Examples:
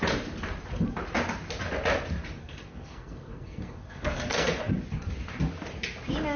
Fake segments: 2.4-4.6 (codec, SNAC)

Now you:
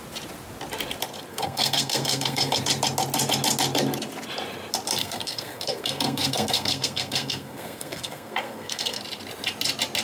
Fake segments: 1.3-2.6 (codec, SNAC); 5.0-9.0

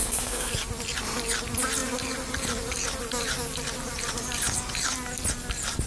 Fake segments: 0.0-0.5 (codec, SNAC)

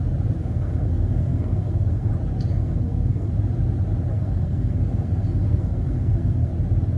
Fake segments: 0.4-2.1 (codec, SNAC); 2.5-3.3; 4.1-6.5